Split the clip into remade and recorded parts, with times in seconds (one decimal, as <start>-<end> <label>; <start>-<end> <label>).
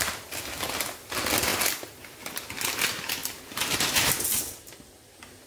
0.0-5.5 recorded